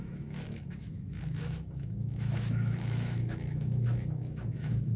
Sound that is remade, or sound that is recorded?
remade